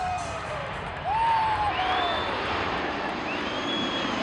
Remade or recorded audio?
remade